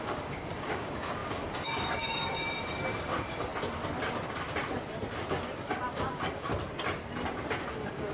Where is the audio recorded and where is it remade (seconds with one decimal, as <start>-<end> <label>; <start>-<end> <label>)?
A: 0.0-3.5 remade; 3.5-5.9 recorded; 5.9-6.5 remade; 6.5-7.6 recorded; 7.6-8.1 remade